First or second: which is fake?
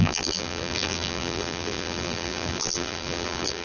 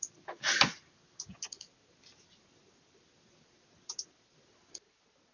first